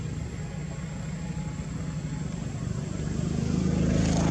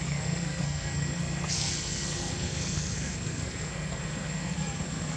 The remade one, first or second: second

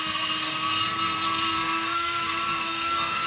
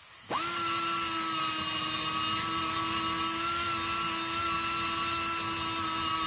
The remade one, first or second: first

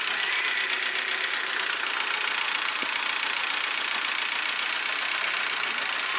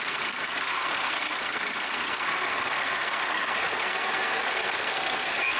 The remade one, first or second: second